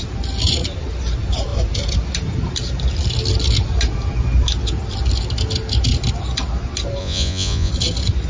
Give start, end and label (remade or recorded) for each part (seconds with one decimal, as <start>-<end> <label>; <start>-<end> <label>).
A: 0.0-7.0 recorded; 7.0-7.7 remade; 7.7-8.3 recorded